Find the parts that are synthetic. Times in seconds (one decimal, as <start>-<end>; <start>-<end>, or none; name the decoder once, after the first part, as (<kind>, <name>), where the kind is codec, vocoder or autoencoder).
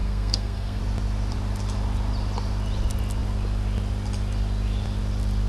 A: 0.0-0.8 (codec, SNAC)